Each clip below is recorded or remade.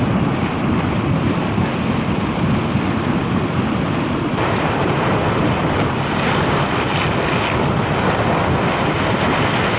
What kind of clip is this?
recorded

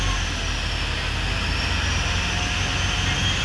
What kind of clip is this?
recorded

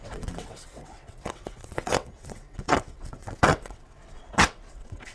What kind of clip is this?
remade